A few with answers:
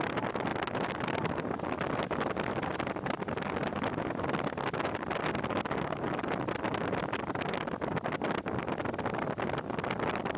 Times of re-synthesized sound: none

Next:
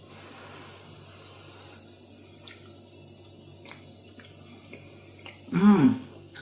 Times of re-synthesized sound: 5.5-6.4 (codec, SNAC)

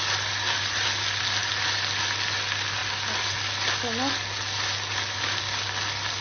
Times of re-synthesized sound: none

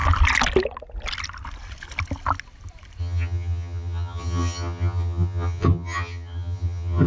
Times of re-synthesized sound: 3.0-7.1 (vocoder, HiFi-GAN)

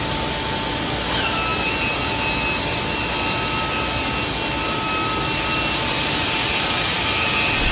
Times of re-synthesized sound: none

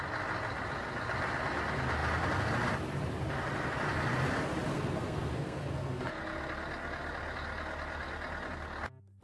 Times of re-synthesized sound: 4.7-6.2 (codec, SNAC)